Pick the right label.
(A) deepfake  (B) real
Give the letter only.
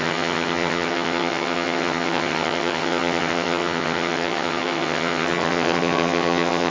A